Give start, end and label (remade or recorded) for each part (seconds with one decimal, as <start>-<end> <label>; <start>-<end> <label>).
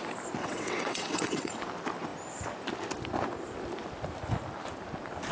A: 0.0-0.4 recorded; 0.4-1.5 remade; 1.5-5.3 recorded